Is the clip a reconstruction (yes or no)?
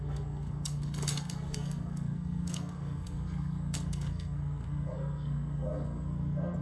yes